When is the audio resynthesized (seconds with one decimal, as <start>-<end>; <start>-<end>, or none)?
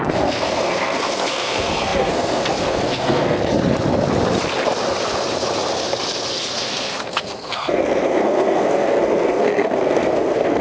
0.0-3.4; 6.5-10.6